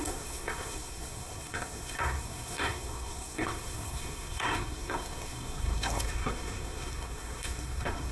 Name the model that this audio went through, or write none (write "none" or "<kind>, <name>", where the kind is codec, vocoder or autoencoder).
codec, SNAC